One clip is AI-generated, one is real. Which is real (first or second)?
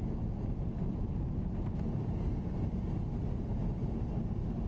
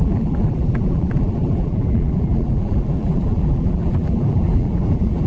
first